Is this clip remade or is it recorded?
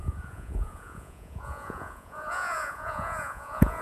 remade